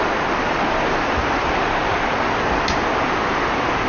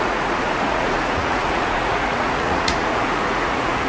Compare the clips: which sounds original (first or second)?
first